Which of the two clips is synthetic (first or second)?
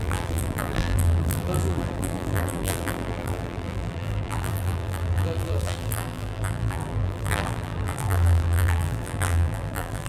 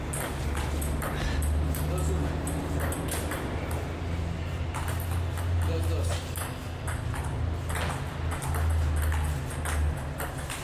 first